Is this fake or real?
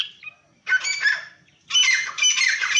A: real